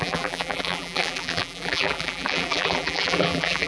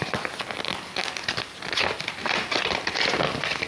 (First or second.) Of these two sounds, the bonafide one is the second